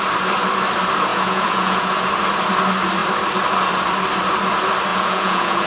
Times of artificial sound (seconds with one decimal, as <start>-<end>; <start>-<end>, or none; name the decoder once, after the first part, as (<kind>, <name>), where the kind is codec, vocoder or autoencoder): 1.1-2.1 (vocoder, Vocos); 4.9-5.7